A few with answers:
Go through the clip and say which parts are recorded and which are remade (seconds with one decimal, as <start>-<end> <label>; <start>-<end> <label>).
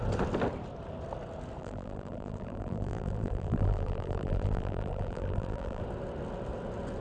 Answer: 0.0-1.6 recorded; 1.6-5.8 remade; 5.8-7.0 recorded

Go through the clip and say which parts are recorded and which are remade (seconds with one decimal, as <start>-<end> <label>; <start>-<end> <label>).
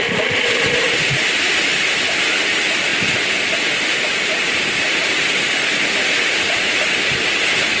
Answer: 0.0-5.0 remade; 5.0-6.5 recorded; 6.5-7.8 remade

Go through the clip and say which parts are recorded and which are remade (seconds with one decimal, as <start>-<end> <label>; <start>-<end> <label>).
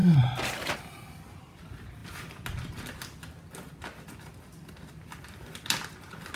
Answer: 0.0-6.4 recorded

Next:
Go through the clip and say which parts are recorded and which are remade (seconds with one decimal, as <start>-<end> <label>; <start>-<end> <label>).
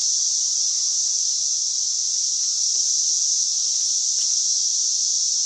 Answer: 0.0-1.7 remade; 1.7-2.5 recorded; 2.5-3.4 remade; 3.4-4.7 recorded; 4.7-5.5 remade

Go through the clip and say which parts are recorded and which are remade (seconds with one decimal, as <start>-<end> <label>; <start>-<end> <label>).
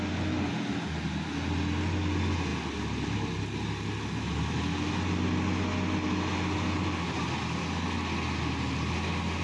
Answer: 0.0-9.4 recorded